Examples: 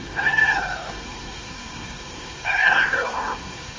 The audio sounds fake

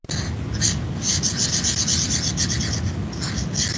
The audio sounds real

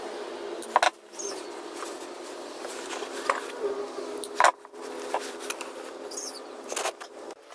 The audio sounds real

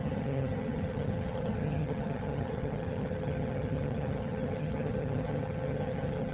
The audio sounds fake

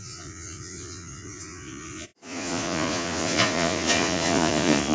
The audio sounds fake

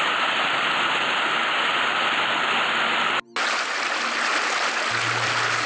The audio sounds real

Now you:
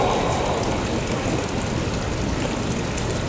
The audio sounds real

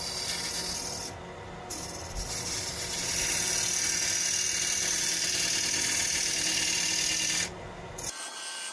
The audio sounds real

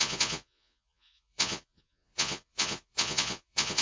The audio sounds fake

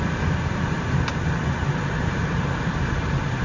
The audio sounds real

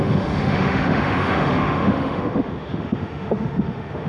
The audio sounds fake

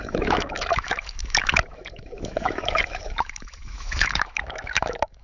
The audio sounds fake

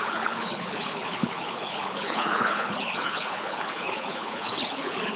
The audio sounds fake